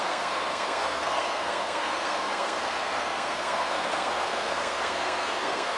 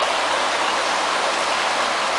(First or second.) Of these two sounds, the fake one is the first